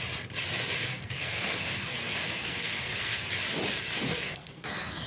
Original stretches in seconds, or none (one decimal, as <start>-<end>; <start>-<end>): 0.0-0.8; 3.3-4.1

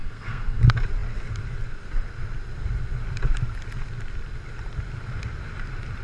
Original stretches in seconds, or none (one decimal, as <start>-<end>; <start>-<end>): 0.6-6.0

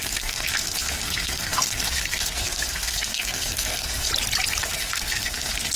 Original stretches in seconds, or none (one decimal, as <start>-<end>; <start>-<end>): 4.1-4.6